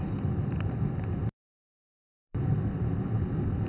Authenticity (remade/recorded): remade